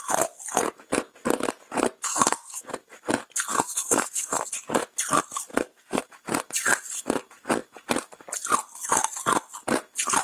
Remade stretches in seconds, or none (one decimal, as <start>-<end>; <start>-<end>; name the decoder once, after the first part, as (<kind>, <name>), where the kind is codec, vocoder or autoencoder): 2.1-2.6 (codec, SNAC); 3.5-4.4; 5.5-6.0